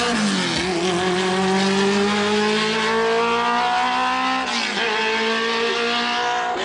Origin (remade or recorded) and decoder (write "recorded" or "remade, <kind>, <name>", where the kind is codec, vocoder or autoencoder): recorded